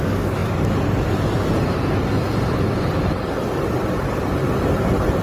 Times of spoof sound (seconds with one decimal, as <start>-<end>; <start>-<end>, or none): 0.4-3.5